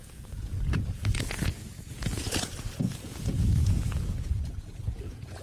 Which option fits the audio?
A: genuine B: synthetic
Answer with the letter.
B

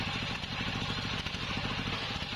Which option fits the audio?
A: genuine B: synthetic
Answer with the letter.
A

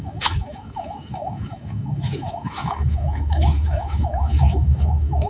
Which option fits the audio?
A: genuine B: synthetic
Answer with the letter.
B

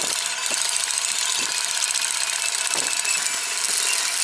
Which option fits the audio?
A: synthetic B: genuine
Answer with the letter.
B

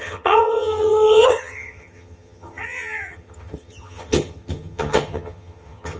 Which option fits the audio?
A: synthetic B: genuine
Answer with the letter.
A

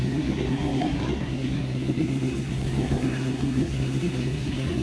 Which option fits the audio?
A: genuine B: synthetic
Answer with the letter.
B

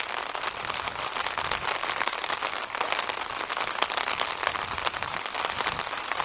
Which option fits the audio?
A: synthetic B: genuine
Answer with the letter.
B